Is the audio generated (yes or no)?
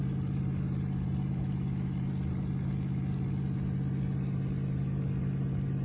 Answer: no